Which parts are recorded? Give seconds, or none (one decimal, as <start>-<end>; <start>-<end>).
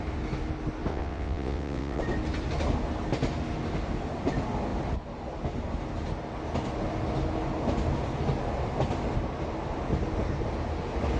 0.0-0.9; 2.0-11.2